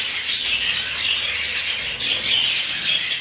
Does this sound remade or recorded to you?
recorded